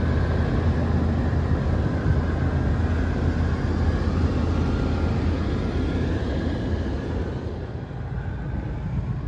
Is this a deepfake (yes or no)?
no